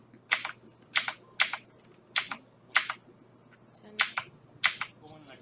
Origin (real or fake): real